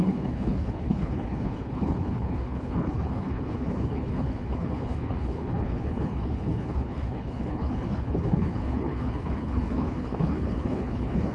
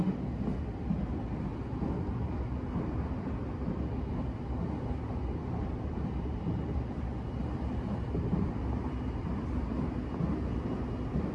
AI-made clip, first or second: first